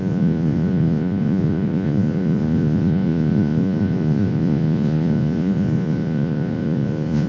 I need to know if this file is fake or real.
fake